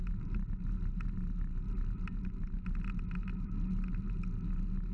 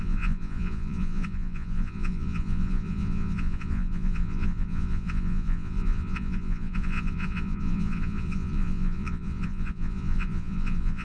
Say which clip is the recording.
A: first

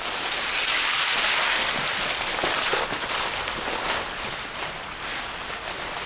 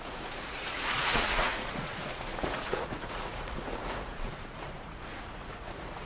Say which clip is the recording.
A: first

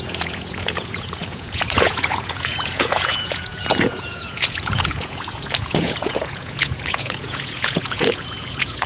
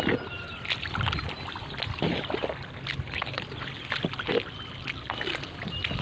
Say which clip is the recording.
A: second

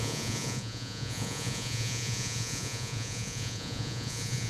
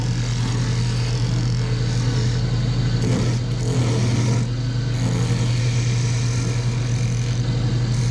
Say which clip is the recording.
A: second